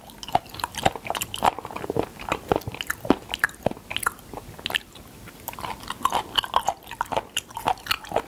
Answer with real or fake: real